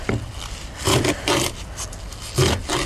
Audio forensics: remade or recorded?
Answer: recorded